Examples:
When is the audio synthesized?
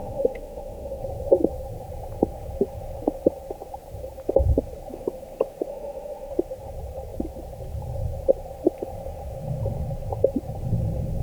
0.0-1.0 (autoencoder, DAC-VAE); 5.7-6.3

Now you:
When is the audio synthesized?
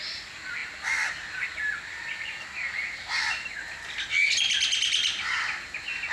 none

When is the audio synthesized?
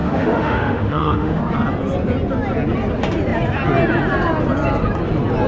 0.0-1.4 (autoencoder, DAC-VAE)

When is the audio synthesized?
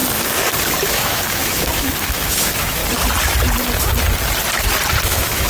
0.9-2.8 (autoencoder, DAC-VAE); 5.1-5.5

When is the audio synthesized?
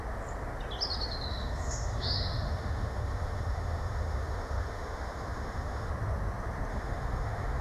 1.3-5.9 (autoencoder, DAC-VAE); 6.7-7.6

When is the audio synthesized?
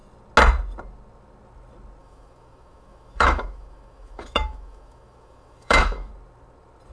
2.0-6.1 (autoencoder, DAC-VAE)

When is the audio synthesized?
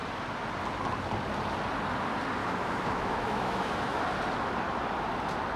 2.4-4.0 (autoencoder, DAC-VAE)